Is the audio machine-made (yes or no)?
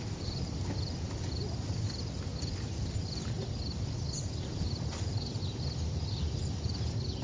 no